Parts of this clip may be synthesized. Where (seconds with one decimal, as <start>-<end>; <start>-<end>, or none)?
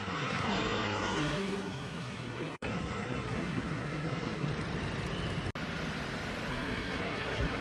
0.0-4.5; 6.5-7.6